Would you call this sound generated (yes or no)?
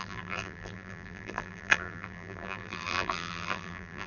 yes